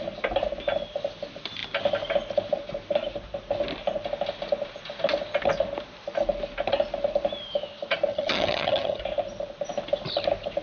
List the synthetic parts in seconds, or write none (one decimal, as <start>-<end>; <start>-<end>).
8.1-9.0